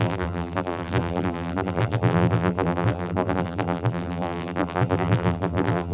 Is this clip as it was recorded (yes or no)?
no